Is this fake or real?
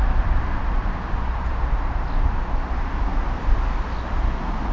real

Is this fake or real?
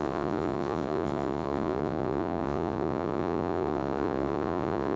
fake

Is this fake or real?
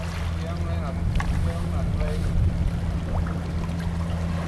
real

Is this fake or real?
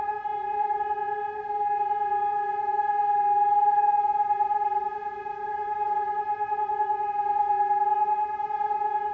real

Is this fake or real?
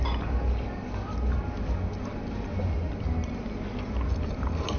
real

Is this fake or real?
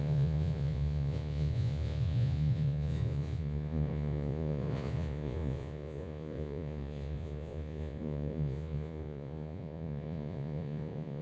fake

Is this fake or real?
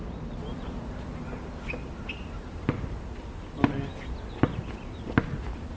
real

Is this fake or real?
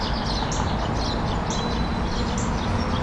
real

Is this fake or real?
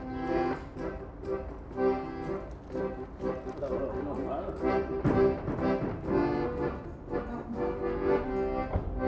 real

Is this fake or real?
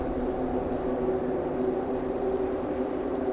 real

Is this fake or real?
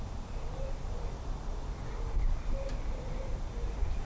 real